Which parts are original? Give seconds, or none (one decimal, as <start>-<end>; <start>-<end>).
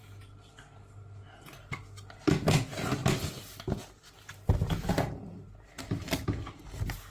0.0-7.1